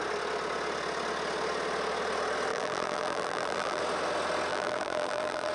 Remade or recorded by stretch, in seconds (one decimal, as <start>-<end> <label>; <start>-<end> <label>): 0.0-2.5 recorded; 2.5-3.8 remade; 3.8-4.5 recorded; 4.5-5.5 remade